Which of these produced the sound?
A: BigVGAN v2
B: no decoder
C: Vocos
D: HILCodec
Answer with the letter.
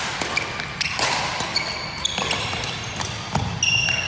B